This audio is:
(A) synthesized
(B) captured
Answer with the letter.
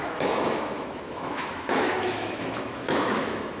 A